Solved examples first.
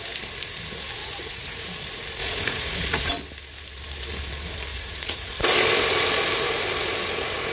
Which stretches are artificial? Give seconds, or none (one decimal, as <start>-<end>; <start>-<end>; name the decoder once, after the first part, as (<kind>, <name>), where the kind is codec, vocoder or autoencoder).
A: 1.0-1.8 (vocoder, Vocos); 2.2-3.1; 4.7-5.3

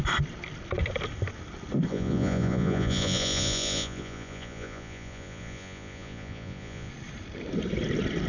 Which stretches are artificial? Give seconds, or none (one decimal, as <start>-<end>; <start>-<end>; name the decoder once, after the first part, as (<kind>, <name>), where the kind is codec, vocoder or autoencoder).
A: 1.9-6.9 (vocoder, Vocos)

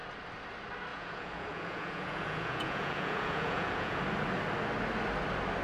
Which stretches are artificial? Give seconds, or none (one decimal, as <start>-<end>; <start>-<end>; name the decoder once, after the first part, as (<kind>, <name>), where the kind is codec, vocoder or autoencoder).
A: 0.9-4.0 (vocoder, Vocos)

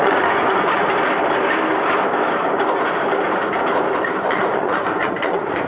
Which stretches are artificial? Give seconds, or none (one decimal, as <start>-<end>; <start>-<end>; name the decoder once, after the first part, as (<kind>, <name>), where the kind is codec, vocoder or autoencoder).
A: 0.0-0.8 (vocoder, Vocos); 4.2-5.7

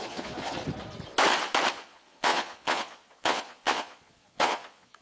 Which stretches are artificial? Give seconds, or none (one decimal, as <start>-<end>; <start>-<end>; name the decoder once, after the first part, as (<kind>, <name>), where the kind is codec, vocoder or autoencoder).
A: 0.0-0.6 (vocoder, Vocos); 1.7-5.0

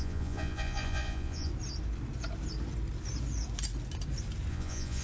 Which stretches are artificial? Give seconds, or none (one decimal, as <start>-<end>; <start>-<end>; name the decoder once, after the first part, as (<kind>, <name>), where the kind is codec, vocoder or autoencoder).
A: 0.0-1.5 (vocoder, Vocos); 4.5-5.0